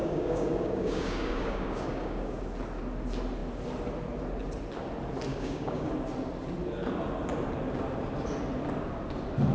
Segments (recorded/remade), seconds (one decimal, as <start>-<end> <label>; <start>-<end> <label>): 0.0-2.4 remade; 2.4-5.3 recorded; 5.3-5.9 remade; 5.9-9.5 recorded